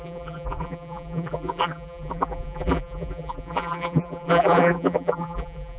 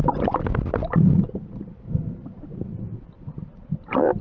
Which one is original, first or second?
second